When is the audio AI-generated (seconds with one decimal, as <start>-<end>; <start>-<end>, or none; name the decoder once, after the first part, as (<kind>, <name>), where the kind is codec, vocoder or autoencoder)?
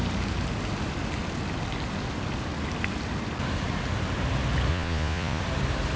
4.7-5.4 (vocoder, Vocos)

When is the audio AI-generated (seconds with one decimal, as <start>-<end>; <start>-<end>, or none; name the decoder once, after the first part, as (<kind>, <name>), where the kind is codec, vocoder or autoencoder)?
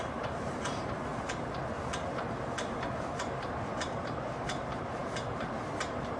0.0-1.1 (vocoder, BigVGAN v2); 3.8-6.2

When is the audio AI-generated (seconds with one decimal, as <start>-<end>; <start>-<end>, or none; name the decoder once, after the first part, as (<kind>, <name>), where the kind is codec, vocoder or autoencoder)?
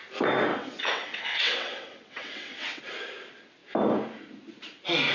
0.5-2.8 (vocoder, WaveNeXt)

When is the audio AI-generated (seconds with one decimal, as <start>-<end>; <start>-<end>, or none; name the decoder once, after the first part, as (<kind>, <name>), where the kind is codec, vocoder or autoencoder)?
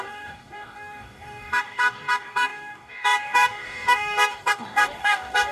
0.0-5.5 (codec, DAC)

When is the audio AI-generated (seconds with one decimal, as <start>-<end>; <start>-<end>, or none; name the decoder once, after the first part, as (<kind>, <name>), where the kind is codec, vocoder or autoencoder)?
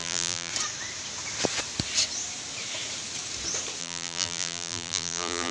0.0-0.5 (vocoder, BigVGAN v2); 3.8-5.5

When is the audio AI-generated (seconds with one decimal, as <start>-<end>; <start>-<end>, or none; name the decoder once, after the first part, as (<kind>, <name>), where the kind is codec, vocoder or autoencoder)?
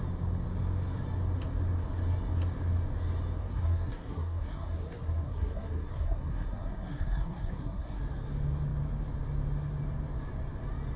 3.4-8.0 (codec, SNAC)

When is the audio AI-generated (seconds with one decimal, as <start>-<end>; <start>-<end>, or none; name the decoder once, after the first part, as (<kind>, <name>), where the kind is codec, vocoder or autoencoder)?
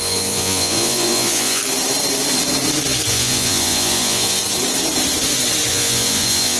0.0-1.6 (vocoder, Vocos); 3.1-4.4; 5.7-6.6